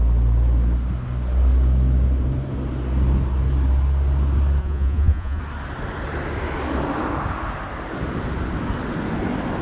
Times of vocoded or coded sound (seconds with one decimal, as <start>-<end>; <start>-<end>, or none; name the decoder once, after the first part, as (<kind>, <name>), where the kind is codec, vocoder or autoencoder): 4.6-5.4 (vocoder, Vocos)

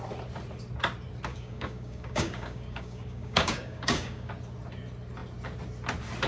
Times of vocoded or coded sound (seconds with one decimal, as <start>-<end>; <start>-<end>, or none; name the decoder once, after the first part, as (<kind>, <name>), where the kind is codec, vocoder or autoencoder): 1.3-4.3 (codec, DAC)

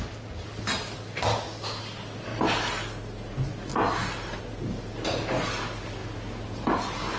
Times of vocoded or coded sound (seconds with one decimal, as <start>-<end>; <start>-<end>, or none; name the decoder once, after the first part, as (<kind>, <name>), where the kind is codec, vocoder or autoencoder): none

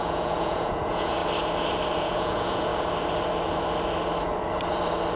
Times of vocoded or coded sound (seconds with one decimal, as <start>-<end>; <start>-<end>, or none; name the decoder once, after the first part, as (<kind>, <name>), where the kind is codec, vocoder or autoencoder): 0.0-1.2 (vocoder, Vocos); 2.0-2.7

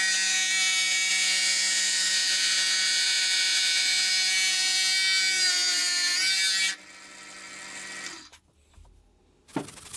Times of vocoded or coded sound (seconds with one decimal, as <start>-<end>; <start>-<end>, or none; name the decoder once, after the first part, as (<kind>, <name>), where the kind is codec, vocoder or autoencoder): 1.1-4.1 (vocoder, Vocos)

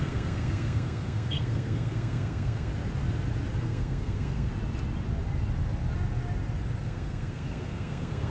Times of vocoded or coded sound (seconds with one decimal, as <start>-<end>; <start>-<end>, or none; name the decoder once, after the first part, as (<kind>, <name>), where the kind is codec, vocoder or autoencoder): 0.0-2.7 (codec, SNAC); 3.6-4.5; 6.8-8.3

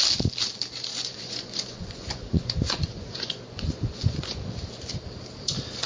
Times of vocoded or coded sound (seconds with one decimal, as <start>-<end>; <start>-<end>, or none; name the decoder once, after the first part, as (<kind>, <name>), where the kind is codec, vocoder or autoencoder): 0.9-4.4 (vocoder, Vocos)